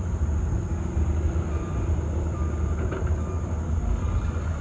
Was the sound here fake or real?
real